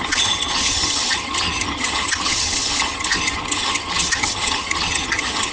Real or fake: fake